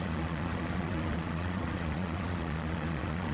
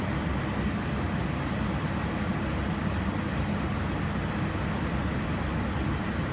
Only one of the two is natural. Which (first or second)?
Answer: second